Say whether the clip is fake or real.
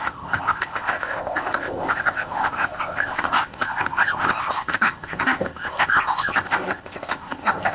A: fake